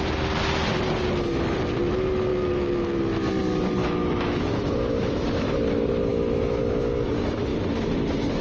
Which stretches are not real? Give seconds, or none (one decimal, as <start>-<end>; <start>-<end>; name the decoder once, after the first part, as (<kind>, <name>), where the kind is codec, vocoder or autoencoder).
3.8-5.6 (autoencoder, DAC-VAE); 6.1-6.6